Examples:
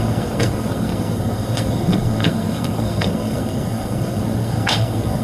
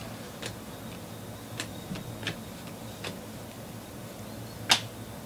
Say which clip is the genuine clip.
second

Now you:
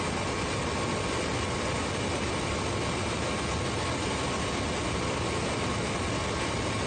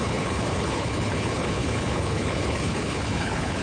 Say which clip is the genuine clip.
first